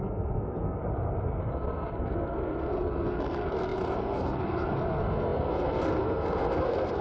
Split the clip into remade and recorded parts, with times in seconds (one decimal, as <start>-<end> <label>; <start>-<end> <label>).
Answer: 0.0-0.8 remade; 0.8-1.4 recorded; 1.4-7.0 remade